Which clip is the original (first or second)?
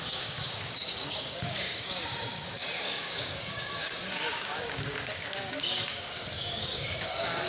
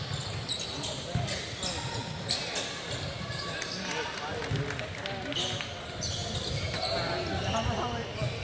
second